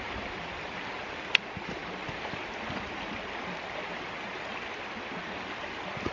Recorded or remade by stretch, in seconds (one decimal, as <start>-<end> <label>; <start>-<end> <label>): 0.0-6.1 recorded